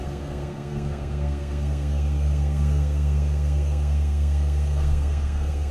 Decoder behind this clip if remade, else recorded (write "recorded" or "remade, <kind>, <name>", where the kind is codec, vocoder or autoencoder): remade, codec, SNAC